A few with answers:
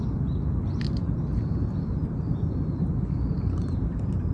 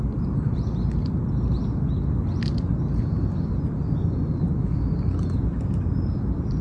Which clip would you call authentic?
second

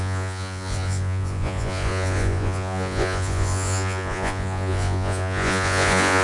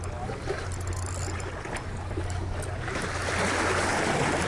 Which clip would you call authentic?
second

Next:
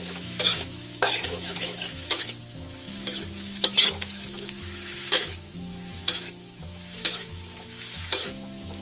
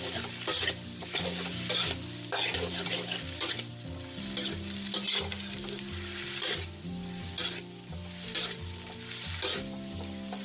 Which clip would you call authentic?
second